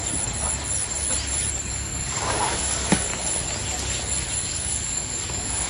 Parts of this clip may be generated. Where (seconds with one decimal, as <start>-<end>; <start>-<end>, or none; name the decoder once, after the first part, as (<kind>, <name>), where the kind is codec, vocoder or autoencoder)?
1.7-3.1 (codec, DAC); 4.4-5.7